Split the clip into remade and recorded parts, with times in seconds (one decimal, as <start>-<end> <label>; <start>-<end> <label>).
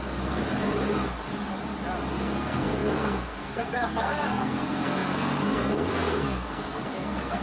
0.0-0.4 remade; 0.4-2.1 recorded; 2.1-7.4 remade